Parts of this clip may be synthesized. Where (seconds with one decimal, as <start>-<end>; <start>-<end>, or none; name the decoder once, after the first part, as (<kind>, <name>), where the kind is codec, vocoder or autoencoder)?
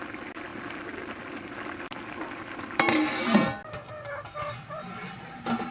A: none